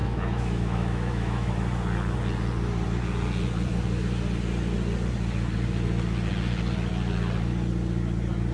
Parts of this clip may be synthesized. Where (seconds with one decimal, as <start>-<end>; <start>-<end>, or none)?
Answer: 0.0-1.5